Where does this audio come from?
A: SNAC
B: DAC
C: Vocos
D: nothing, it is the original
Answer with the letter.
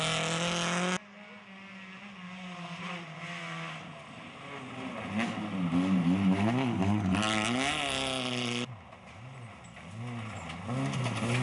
D